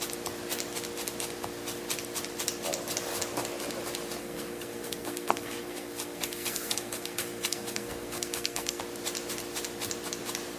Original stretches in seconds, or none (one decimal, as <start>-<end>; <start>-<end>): 0.0-4.2; 8.8-10.6

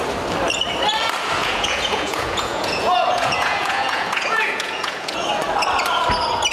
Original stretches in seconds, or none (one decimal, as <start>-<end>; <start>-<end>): 0.0-1.4; 5.3-6.5